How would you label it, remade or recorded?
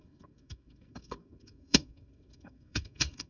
remade